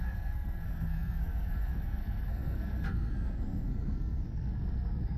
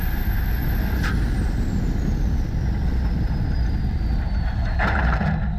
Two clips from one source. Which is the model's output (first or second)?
first